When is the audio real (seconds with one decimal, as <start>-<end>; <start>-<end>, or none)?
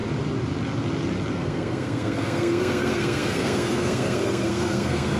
0.0-1.3